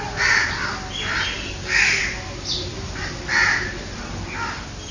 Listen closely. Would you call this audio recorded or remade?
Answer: recorded